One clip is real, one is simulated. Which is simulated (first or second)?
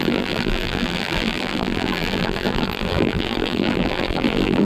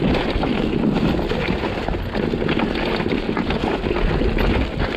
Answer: first